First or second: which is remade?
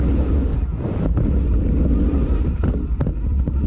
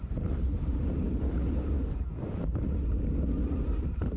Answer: second